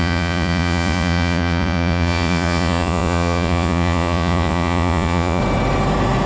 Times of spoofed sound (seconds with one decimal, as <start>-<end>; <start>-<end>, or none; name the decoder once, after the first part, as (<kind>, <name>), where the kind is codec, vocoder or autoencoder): 0.0-5.4 (vocoder, Vocos)